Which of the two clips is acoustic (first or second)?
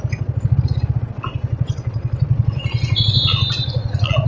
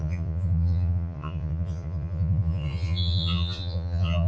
first